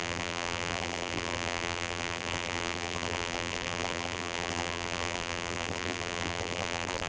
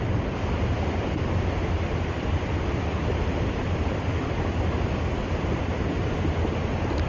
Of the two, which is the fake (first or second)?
first